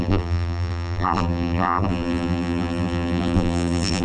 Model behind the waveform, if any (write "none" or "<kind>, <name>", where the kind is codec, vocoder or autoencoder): vocoder, BigVGAN v2